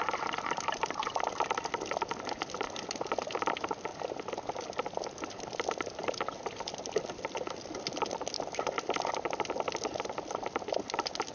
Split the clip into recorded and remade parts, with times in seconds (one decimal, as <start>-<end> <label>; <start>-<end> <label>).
0.0-11.3 recorded